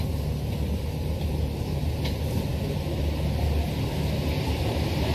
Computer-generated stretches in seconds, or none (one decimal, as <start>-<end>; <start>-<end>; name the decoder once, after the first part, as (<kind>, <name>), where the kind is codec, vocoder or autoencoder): none